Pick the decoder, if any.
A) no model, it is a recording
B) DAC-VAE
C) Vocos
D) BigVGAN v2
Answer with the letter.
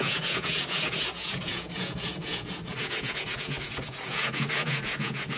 C